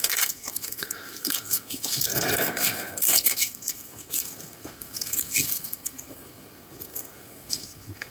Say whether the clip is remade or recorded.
remade